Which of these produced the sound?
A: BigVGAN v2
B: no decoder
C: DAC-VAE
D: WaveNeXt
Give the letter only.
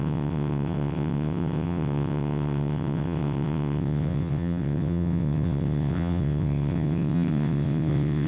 D